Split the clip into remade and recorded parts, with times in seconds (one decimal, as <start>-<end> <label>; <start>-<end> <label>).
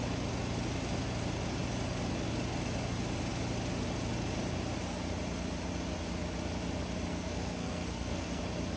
0.0-7.1 recorded; 7.1-8.4 remade; 8.4-8.8 recorded